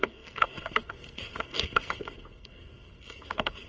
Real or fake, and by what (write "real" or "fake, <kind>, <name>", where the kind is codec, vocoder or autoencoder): fake, codec, SNAC